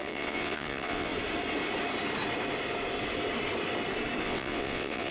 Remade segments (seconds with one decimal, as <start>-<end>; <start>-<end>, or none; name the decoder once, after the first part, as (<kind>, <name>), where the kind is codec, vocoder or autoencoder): 0.0-1.1 (vocoder, WaveNeXt); 4.2-5.1